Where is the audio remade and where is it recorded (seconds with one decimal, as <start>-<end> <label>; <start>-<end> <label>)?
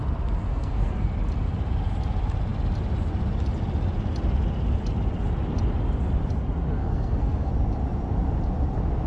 0.0-0.5 recorded; 0.5-1.1 remade; 1.1-6.8 recorded; 6.8-7.5 remade; 7.5-9.1 recorded